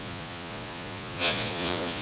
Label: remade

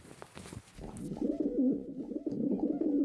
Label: recorded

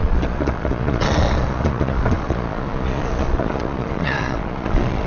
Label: remade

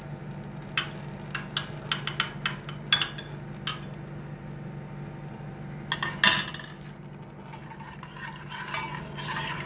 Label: recorded